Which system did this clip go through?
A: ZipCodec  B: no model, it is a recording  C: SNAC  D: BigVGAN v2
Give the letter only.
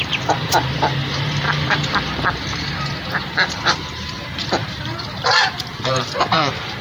D